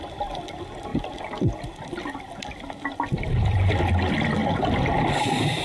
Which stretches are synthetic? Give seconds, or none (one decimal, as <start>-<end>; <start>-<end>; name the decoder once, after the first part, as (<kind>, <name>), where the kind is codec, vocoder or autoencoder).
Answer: 0.9-2.2 (vocoder, BigVGAN v2); 4.4-5.6